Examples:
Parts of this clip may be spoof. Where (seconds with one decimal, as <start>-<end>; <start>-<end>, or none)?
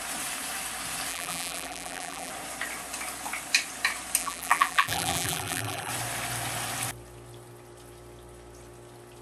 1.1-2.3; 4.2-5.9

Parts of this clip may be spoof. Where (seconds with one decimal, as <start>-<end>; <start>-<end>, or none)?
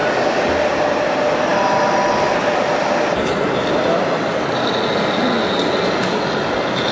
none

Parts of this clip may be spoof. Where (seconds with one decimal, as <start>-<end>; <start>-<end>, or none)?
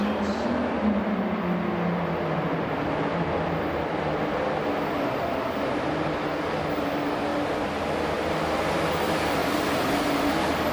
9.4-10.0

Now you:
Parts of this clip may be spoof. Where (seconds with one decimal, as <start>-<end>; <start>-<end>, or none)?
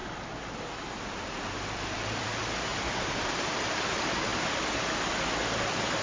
1.4-2.7; 3.6-4.3; 5.6-6.0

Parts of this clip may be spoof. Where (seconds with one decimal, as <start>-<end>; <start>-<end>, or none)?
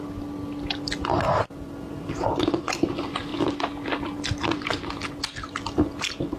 none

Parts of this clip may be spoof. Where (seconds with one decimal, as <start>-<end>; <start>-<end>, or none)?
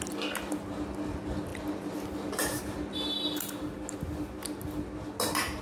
none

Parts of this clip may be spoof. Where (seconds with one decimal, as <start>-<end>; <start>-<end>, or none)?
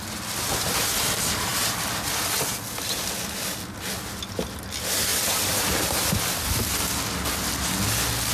none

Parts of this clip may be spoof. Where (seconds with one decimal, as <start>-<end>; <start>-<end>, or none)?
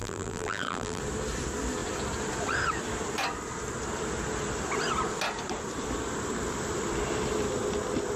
0.0-1.0